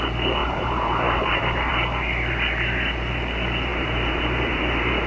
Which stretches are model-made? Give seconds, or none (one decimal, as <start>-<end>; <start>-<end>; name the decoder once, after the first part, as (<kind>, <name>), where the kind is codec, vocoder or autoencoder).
0.4-1.7 (vocoder, BigVGAN v2); 3.7-5.1